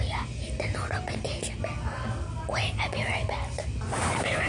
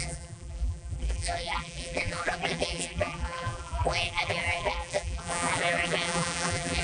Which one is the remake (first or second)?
second